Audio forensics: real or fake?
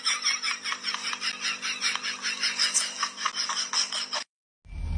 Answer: real